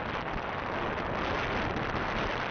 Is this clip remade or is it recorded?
recorded